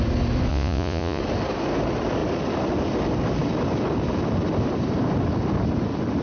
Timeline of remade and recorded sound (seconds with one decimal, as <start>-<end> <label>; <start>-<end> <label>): 0.0-0.5 recorded; 0.5-1.2 remade; 1.2-6.2 recorded